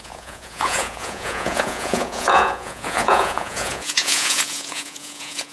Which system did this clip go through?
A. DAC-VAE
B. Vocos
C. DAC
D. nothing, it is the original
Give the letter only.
B